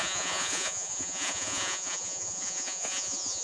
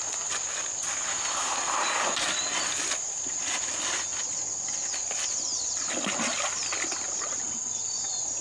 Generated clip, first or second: first